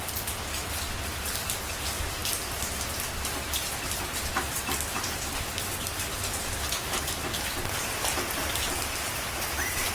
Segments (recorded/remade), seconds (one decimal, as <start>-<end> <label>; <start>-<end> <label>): 0.0-9.9 recorded